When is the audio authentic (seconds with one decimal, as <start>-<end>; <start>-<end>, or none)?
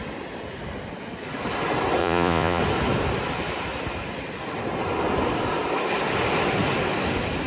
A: 0.0-2.0; 2.6-7.5